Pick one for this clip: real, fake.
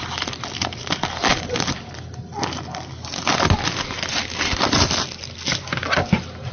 real